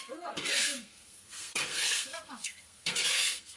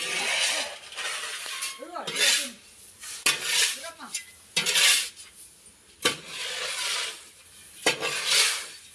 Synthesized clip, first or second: first